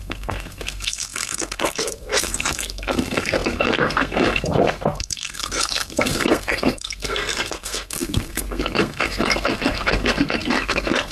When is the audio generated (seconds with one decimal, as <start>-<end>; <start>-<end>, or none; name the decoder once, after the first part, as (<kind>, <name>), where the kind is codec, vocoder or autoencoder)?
0.0-11.1 (codec, SNAC)